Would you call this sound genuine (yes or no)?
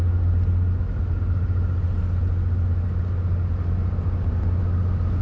yes